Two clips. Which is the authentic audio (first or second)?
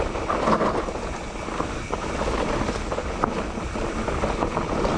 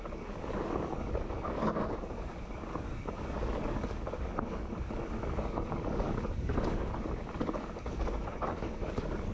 first